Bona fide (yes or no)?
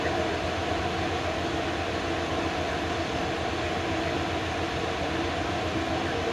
yes